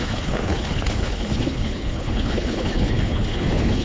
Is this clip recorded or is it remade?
remade